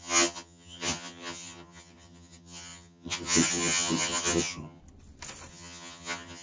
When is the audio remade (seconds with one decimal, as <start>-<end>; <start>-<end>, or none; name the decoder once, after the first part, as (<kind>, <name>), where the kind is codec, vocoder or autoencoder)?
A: 0.0-4.8 (vocoder, HiFi-GAN); 5.5-6.4